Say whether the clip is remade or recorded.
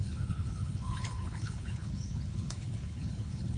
remade